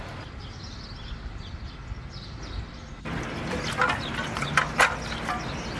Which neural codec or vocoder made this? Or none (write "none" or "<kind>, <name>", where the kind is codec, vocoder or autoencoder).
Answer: none